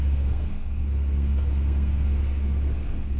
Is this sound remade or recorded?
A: remade